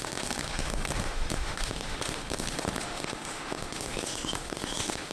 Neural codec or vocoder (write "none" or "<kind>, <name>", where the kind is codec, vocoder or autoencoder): autoencoder, DAC-VAE